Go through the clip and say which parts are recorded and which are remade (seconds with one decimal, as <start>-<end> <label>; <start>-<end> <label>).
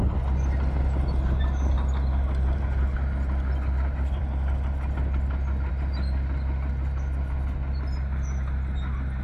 0.0-9.2 recorded